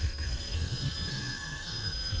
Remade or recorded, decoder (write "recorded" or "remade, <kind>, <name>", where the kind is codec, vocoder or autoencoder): remade, codec, SNAC